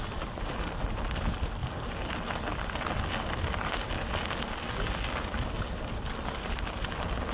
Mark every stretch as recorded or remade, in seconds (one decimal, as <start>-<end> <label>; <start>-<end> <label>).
0.0-7.3 recorded